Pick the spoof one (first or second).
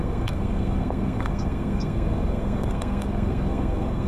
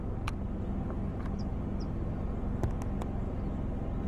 first